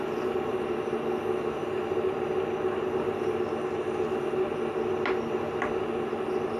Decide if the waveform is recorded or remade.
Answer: recorded